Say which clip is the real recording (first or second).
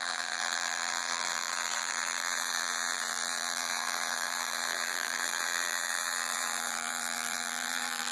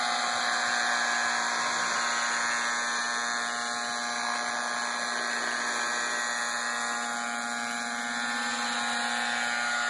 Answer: second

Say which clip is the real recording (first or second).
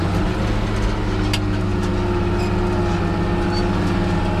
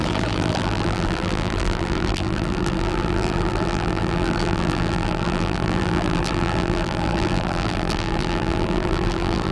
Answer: first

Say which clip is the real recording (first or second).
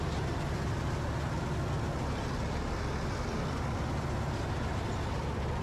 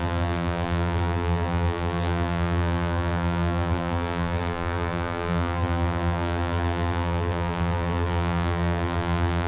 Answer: first